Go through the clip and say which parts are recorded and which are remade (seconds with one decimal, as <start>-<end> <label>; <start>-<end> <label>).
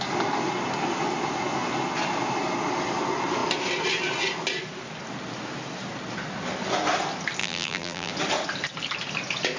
0.0-7.4 recorded; 7.4-8.1 remade; 8.1-9.6 recorded